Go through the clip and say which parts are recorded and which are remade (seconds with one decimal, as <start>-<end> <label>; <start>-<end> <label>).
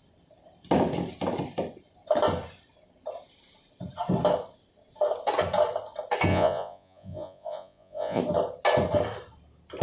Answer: 0.0-6.3 recorded; 6.3-8.2 remade; 8.2-9.8 recorded